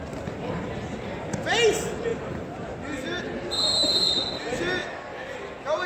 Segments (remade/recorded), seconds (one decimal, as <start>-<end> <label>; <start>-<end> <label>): 0.0-4.8 recorded; 4.8-5.4 remade; 5.4-5.9 recorded